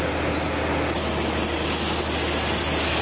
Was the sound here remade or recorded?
recorded